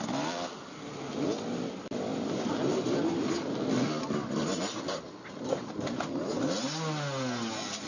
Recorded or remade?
recorded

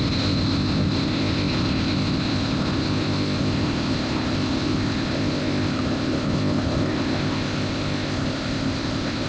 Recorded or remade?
remade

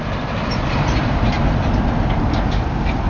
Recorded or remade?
recorded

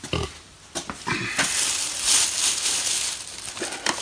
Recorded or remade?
recorded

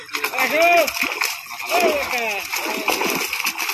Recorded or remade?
recorded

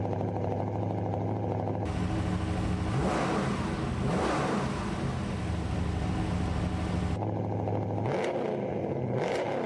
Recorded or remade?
recorded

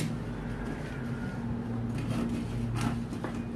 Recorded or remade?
recorded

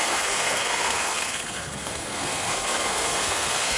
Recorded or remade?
remade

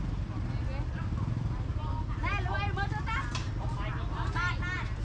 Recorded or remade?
recorded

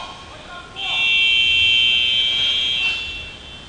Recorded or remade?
recorded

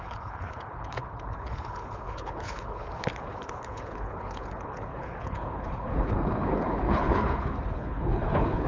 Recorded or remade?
remade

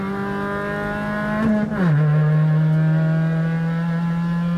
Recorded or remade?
recorded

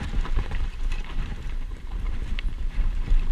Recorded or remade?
remade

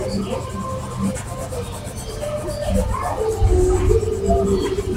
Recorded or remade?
recorded